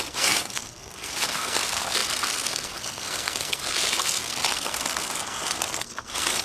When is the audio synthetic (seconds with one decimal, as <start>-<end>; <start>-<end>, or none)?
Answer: 0.0-6.4